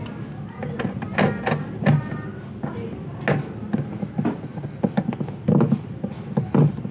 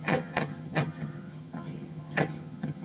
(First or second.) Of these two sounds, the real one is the first